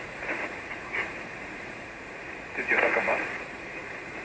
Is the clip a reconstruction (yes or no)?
yes